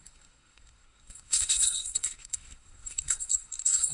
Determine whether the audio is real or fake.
fake